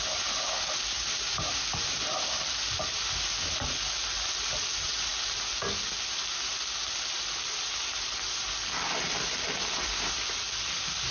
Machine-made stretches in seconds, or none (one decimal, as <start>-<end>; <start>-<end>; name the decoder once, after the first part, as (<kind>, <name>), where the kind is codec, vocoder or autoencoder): none